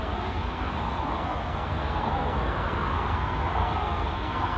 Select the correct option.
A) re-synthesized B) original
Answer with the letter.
A